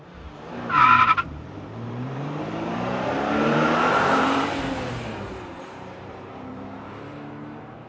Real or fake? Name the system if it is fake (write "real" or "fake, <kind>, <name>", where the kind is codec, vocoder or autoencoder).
fake, vocoder, BigVGAN v2